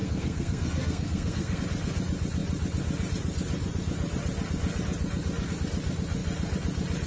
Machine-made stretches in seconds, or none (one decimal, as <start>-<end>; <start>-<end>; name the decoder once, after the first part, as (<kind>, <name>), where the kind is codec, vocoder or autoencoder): 0.0-1.6 (codec, SNAC)